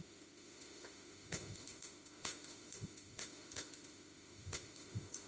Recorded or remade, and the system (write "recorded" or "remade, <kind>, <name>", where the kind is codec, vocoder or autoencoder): remade, autoencoder, DAC-VAE